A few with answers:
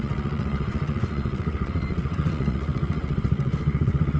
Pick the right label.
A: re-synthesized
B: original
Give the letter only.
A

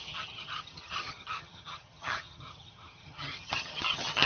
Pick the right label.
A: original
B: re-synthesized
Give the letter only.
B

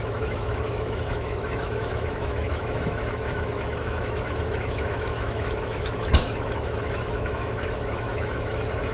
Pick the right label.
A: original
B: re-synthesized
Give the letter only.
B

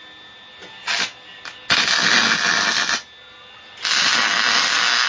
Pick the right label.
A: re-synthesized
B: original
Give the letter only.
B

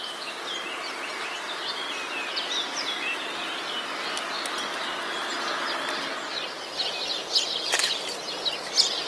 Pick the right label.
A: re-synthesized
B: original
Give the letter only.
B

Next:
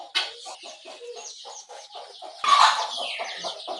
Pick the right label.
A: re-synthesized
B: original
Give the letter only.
B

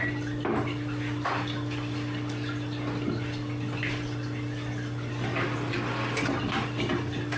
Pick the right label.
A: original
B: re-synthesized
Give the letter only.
A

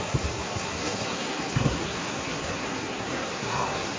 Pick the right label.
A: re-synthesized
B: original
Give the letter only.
A